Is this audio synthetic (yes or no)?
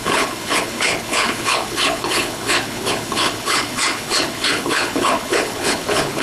yes